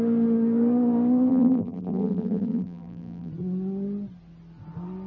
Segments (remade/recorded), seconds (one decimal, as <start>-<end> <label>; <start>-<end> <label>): 0.0-1.3 recorded; 1.3-3.3 remade; 3.3-5.1 recorded